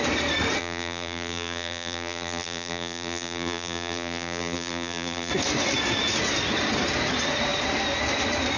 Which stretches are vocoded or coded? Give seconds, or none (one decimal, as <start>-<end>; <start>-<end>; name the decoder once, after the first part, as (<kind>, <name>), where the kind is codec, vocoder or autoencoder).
0.6-5.3 (vocoder, BigVGAN v2)